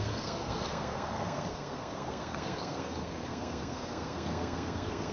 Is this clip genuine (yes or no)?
no